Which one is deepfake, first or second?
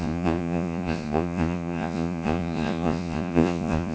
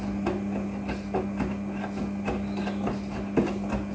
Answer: first